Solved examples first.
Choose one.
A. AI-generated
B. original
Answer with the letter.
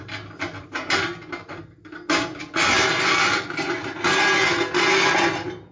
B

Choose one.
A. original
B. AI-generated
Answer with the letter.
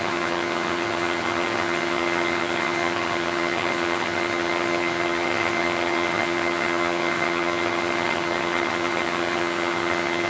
B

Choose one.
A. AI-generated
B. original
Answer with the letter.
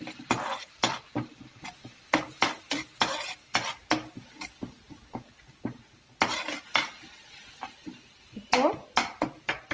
B